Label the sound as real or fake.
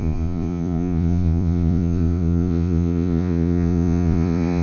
fake